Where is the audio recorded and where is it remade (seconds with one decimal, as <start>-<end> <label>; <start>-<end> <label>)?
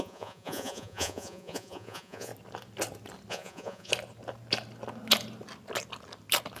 0.0-2.3 remade; 2.3-3.3 recorded; 3.3-3.9 remade; 3.9-6.6 recorded